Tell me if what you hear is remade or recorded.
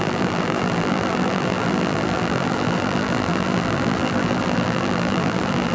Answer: remade